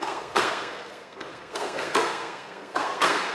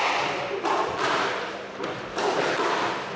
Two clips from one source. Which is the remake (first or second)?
first